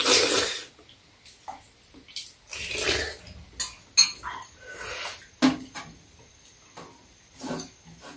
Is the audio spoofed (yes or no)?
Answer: no